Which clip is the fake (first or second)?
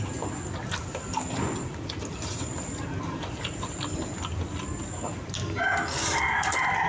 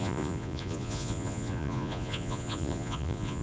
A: second